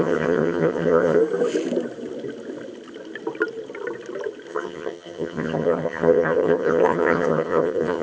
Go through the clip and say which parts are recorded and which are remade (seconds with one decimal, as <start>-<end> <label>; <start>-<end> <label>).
0.0-1.2 remade; 1.2-4.5 recorded; 4.5-8.0 remade